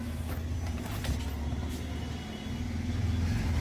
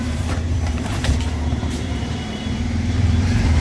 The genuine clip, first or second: first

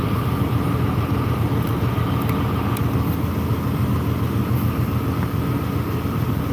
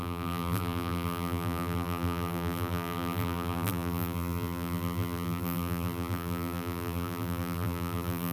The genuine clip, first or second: first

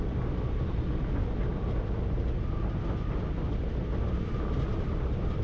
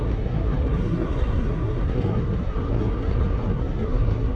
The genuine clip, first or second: first